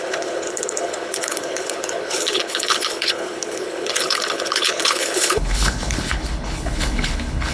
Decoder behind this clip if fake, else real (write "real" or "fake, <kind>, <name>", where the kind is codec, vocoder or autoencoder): fake, codec, HILCodec